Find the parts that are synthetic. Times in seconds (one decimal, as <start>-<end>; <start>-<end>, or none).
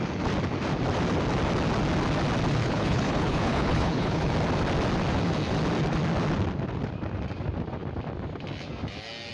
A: 2.6-4.3